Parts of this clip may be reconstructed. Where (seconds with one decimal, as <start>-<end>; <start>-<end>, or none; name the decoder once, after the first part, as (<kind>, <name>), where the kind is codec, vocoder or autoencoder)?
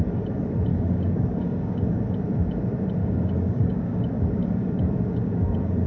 0.7-2.0 (codec, DAC); 3.0-5.9